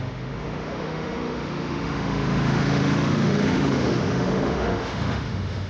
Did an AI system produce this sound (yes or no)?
yes